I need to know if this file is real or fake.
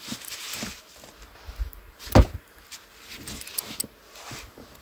real